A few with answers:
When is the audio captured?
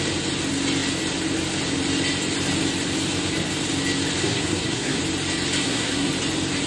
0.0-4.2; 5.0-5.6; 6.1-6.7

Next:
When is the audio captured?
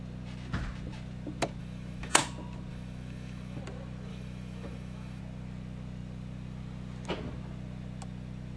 0.0-1.6; 2.2-2.7; 3.6-4.1; 5.2-8.6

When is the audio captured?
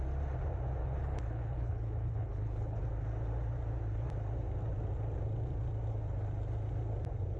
0.0-0.8; 2.8-7.4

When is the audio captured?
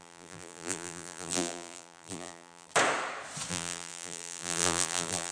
2.7-3.5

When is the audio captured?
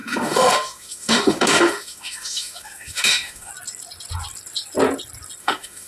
3.5-5.4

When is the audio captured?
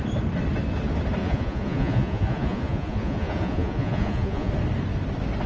0.0-1.2; 4.5-5.5